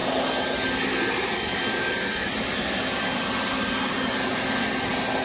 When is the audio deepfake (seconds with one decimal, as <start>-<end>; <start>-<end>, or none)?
none